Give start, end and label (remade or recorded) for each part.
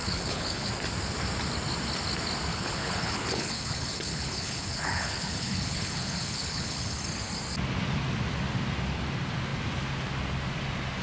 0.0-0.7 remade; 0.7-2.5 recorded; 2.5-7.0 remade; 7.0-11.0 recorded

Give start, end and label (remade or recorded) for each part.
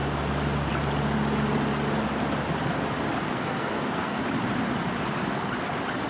0.0-3.3 recorded; 3.3-4.2 remade; 4.2-6.1 recorded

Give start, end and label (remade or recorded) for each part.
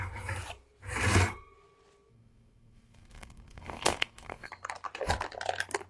0.0-2.1 recorded; 2.1-4.5 remade; 4.5-5.9 recorded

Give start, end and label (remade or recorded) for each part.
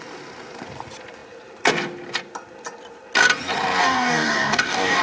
0.0-3.8 recorded; 3.8-5.0 remade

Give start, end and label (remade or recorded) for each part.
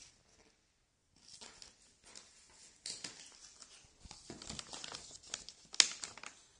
0.0-6.6 recorded